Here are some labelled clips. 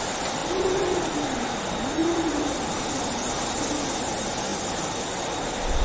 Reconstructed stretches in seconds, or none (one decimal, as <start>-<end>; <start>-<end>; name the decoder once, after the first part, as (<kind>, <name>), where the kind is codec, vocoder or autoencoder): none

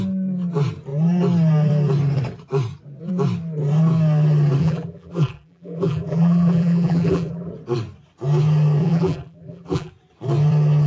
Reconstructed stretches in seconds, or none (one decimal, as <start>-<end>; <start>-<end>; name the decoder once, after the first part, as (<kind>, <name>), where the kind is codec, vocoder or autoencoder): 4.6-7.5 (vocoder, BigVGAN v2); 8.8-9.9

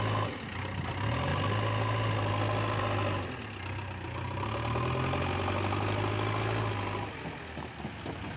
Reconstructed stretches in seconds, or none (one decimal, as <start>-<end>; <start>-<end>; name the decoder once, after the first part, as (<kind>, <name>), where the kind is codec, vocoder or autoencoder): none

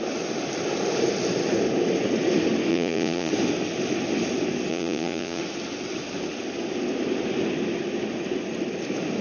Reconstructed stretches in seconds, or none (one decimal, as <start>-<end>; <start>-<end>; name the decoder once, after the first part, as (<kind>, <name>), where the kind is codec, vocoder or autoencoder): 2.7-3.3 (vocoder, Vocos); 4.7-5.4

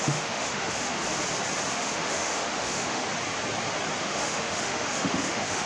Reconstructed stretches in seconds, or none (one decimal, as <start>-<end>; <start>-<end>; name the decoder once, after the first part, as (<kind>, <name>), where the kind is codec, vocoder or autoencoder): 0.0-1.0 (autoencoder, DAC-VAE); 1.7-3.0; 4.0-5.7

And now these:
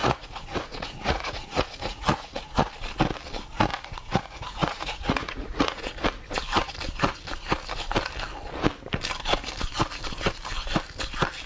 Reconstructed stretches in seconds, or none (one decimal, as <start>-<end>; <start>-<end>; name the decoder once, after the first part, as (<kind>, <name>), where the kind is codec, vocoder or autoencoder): 0.0-2.7 (vocoder, Vocos); 3.7-5.9

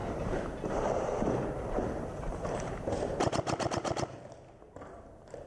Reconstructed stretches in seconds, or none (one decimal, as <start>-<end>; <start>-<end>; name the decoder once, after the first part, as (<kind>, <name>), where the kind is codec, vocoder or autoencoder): 0.0-3.3 (vocoder, BigVGAN v2)

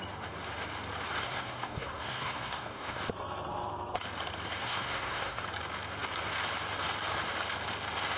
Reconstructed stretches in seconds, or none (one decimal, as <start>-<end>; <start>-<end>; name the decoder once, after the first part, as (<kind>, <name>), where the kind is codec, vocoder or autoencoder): 1.2-3.0 (codec, SNAC); 4.6-5.4